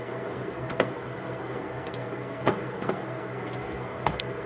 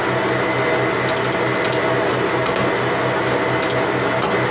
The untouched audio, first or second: second